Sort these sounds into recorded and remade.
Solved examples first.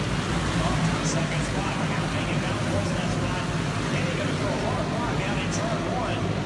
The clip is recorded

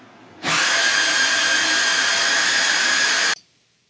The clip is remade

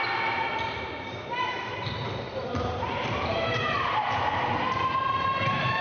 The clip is remade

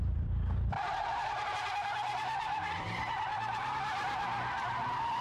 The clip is remade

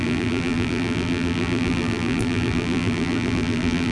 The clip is remade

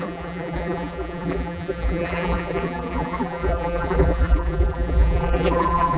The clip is remade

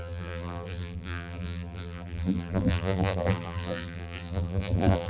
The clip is remade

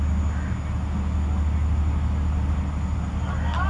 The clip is recorded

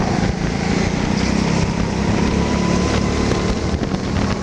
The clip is recorded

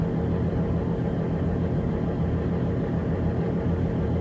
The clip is remade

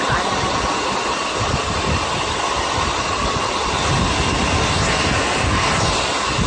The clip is recorded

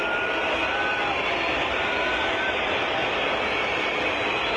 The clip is recorded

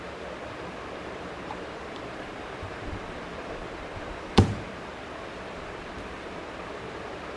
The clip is remade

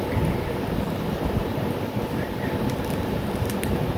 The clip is remade